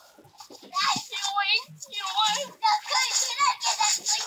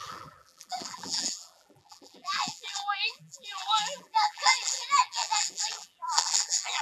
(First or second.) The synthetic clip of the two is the second